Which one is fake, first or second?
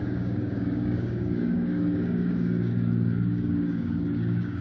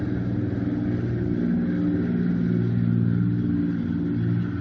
first